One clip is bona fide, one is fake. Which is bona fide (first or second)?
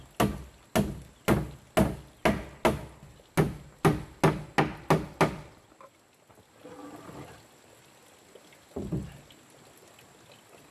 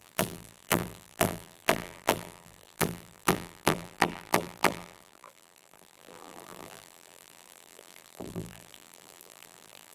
first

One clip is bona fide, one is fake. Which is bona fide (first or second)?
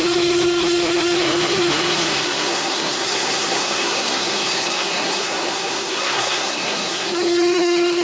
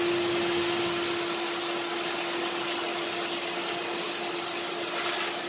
second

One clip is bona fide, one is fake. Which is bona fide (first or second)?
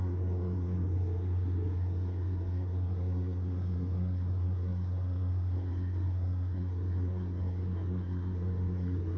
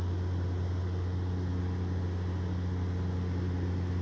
second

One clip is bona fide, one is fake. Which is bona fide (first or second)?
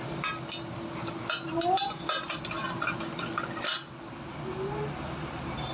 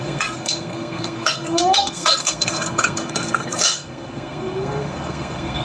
first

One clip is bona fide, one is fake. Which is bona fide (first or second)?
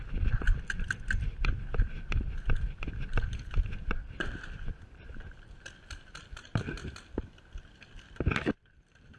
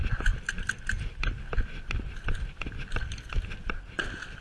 second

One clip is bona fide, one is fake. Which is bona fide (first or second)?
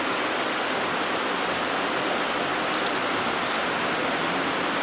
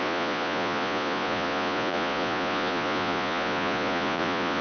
first